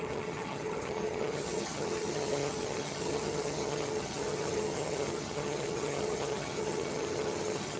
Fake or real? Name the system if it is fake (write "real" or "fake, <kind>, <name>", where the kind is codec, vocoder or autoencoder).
fake, vocoder, HiFi-GAN